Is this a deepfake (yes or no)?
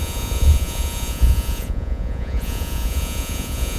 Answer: yes